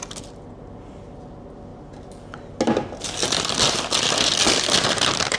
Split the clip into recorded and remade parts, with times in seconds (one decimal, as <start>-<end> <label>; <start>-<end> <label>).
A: 0.0-5.4 recorded